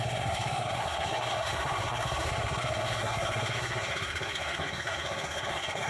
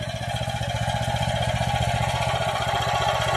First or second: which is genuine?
second